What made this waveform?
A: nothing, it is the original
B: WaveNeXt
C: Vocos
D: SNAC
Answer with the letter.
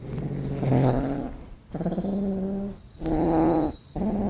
A